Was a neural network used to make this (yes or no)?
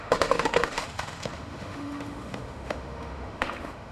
yes